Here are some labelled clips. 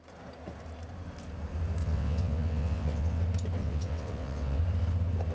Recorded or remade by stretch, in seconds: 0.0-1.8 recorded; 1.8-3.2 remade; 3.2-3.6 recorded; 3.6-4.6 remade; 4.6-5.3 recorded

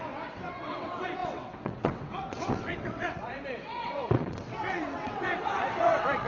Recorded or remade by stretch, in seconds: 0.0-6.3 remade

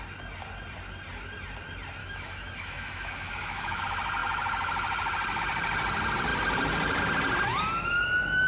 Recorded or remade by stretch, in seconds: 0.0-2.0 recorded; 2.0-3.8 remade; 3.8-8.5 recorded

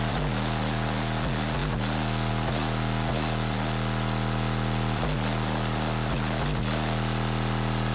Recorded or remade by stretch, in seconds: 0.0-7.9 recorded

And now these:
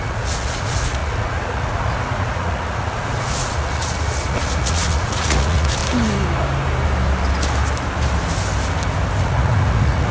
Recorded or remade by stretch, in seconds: 0.0-5.8 remade; 5.8-9.2 recorded; 9.2-10.1 remade

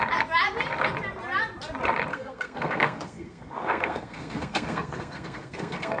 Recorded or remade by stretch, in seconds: 0.0-2.1 recorded; 2.1-6.0 remade

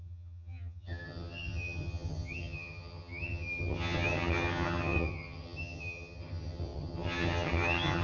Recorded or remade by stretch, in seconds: 0.0-8.0 remade

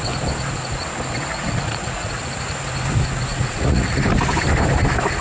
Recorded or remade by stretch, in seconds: 0.0-1.3 recorded; 1.3-2.2 remade; 2.2-3.3 recorded; 3.3-4.0 remade; 4.0-5.2 recorded